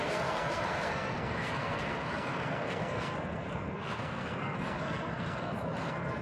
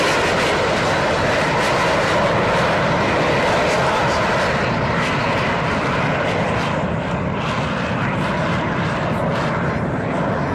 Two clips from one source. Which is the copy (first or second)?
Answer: first